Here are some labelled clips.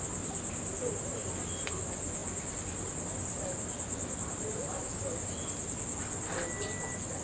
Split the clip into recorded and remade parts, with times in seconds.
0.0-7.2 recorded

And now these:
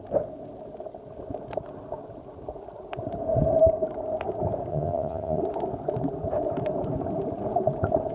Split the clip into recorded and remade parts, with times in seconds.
0.0-4.7 recorded; 4.7-5.4 remade; 5.4-8.1 recorded